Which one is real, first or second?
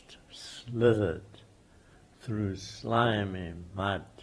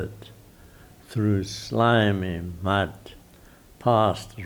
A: second